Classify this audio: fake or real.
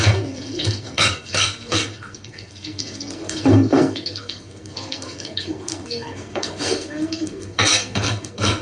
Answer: fake